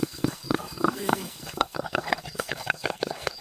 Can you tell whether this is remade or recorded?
remade